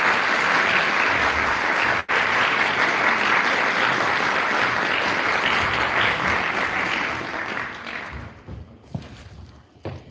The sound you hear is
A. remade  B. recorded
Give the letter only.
B